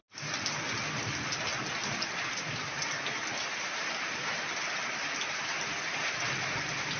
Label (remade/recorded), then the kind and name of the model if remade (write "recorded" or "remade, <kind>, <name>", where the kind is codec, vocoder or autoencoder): recorded